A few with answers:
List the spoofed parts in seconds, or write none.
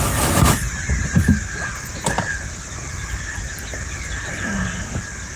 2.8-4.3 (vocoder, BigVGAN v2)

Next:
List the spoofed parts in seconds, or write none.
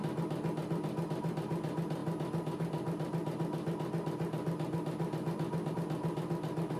none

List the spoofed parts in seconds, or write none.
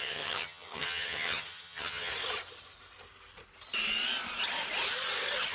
0.0-2.1 (vocoder, HiFi-GAN)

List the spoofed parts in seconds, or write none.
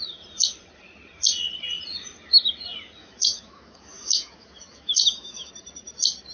3.0-5.5 (autoencoder, DAC-VAE)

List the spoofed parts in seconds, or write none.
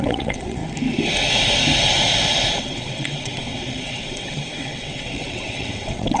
0.0-0.6 (vocoder, WaveNeXt); 2.6-6.2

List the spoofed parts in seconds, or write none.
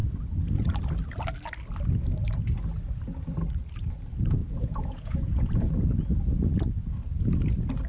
4.4-5.7 (vocoder, Vocos)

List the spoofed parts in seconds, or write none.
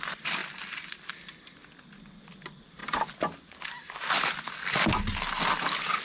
none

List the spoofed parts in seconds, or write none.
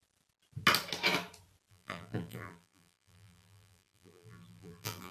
1.7-5.1 (vocoder, BigVGAN v2)